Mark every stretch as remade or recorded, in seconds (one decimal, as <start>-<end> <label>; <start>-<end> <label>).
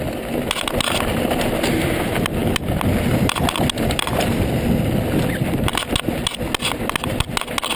0.0-7.8 recorded